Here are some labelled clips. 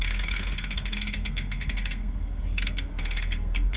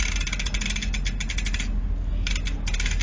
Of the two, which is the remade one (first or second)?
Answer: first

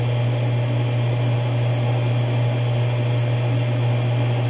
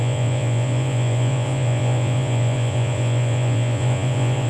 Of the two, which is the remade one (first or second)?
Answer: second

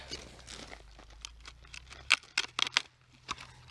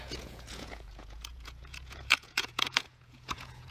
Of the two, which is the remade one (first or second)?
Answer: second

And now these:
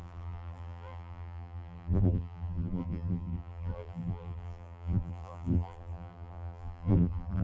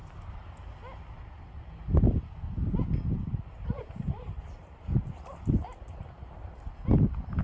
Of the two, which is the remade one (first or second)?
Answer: first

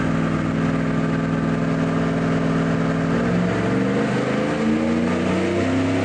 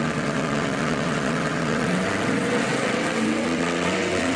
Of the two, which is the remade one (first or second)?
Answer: second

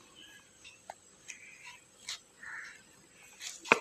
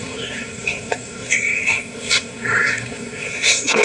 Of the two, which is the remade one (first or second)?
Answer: second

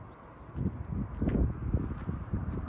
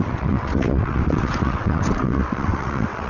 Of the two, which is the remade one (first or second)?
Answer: second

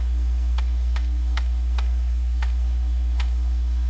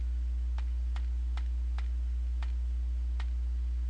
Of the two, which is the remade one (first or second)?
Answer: first